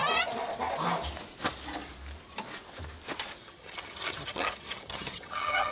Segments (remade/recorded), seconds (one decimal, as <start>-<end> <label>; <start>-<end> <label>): 0.0-3.4 recorded; 3.4-5.7 remade